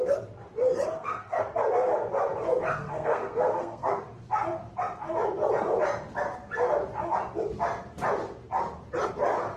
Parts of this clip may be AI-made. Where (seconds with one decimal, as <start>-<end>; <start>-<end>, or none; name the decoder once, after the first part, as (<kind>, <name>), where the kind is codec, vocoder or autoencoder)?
0.9-1.5 (codec, SNAC); 2.6-4.0